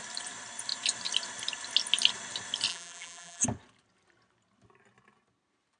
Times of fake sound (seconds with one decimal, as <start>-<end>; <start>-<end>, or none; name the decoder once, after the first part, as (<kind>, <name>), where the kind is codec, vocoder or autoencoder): 2.7-3.4 (vocoder, BigVGAN v2)